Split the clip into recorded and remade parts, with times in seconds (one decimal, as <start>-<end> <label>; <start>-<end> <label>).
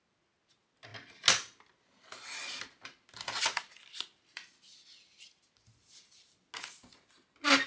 0.0-7.7 recorded